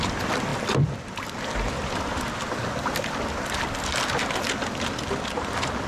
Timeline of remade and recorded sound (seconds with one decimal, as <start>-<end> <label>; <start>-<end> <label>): 0.0-5.9 recorded